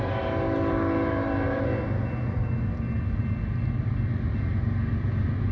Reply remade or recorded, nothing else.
recorded